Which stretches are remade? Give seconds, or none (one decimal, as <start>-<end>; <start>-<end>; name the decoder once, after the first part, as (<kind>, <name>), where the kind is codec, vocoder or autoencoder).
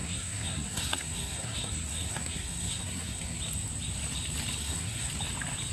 0.0-3.4 (codec, SNAC); 4.6-5.1